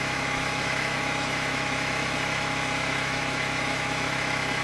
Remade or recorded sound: remade